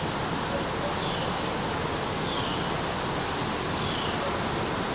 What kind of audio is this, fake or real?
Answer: real